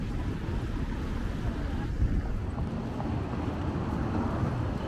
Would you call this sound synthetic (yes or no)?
no